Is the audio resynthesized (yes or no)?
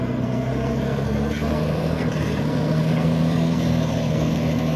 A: yes